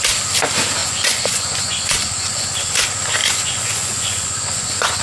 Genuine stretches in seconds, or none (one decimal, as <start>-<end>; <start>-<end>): 0.0-0.8; 2.7-3.2